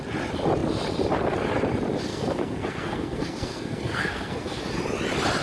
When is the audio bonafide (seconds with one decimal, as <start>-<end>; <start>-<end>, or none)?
0.0-2.1; 4.6-5.4